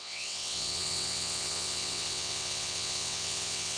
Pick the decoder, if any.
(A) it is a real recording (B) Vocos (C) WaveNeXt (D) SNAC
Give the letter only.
C